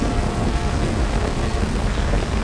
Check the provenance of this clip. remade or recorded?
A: remade